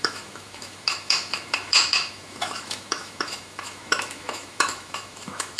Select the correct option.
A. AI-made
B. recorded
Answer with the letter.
A